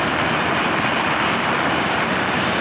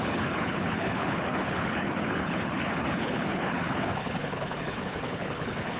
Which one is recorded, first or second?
first